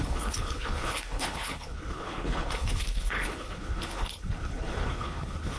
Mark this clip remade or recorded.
remade